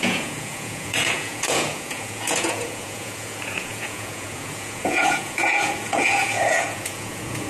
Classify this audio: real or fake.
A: fake